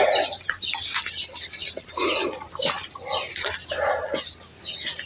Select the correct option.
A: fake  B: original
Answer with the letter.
B